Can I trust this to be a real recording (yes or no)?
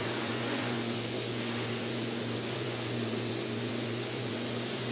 no